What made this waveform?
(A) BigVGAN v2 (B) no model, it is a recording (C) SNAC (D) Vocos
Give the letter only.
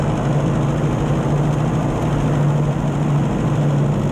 B